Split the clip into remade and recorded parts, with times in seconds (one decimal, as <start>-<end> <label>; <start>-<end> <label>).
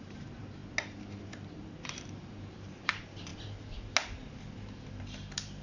0.0-0.6 remade; 0.6-1.5 recorded; 1.5-3.3 remade; 3.3-5.0 recorded; 5.0-5.6 remade